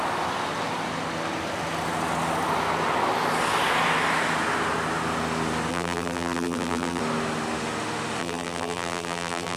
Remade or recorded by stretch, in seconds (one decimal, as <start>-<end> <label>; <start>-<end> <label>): 0.0-5.7 recorded; 5.7-7.0 remade; 7.0-8.2 recorded; 8.2-9.6 remade